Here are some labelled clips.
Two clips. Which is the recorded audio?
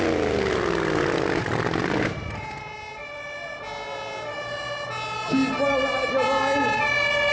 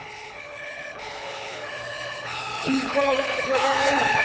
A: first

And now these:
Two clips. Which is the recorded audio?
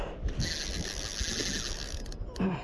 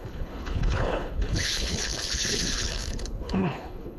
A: first